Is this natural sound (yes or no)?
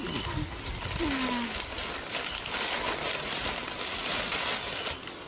yes